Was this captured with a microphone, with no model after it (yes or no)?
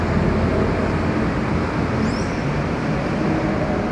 yes